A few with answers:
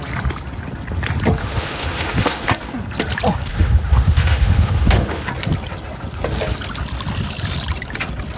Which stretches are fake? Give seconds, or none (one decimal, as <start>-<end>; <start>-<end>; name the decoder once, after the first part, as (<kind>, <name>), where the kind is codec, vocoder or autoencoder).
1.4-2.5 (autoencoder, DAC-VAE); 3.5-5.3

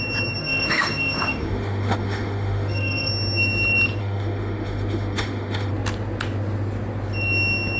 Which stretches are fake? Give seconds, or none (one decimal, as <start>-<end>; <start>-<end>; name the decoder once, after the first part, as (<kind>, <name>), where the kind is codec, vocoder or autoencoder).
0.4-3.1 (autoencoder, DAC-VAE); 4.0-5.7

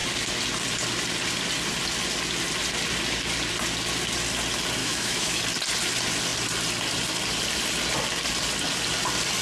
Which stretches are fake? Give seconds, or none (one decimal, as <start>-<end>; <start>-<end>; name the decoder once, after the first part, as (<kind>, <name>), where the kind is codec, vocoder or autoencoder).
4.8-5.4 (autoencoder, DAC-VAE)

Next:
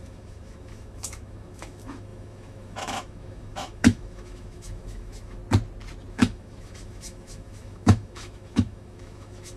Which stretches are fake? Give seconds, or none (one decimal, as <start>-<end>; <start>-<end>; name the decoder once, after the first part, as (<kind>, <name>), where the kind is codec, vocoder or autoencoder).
0.0-5.4 (autoencoder, DAC-VAE); 6.1-9.6